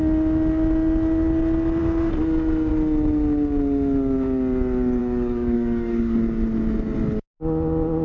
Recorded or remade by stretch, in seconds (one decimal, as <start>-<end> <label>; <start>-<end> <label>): 0.0-5.0 recorded; 5.0-6.2 remade; 6.2-8.0 recorded